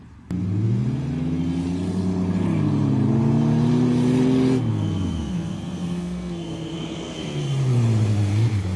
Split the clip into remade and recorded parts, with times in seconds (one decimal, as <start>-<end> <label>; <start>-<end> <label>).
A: 0.0-4.7 recorded; 4.7-7.4 remade; 7.4-8.8 recorded